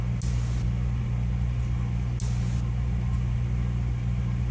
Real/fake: real